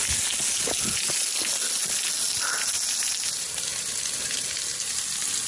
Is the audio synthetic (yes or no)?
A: no